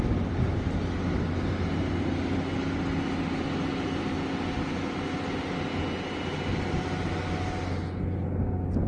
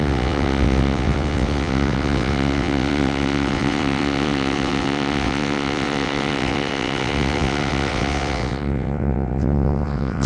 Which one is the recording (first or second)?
first